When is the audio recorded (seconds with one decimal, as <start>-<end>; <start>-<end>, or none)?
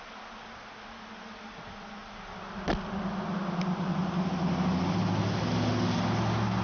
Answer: 0.0-6.6